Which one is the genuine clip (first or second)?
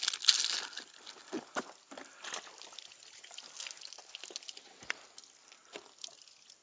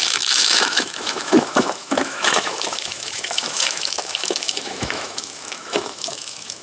first